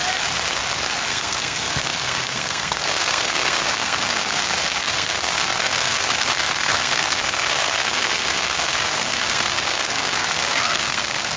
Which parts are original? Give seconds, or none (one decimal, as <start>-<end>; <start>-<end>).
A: 0.0-1.1